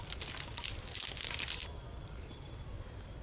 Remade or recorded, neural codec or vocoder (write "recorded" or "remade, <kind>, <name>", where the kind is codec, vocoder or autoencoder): recorded